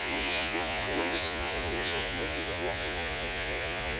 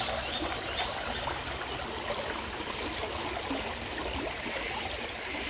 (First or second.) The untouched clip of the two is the second